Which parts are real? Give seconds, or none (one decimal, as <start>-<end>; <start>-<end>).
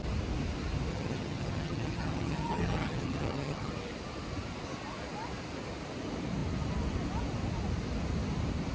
0.0-0.9; 3.7-8.7